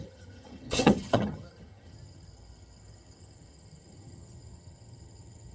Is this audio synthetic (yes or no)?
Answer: yes